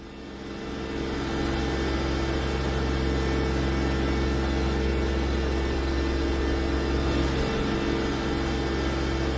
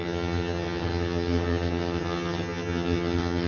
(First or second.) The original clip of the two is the first